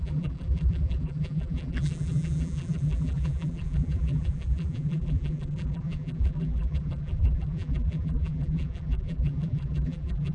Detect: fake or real fake